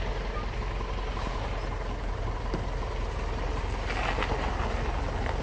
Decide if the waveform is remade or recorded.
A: recorded